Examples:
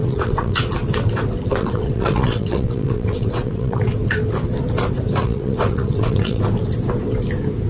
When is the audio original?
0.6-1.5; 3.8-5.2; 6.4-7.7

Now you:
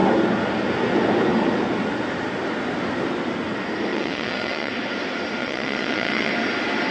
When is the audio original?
0.0-3.9; 4.7-5.4; 6.3-6.9